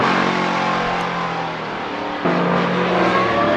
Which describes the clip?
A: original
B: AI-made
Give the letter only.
A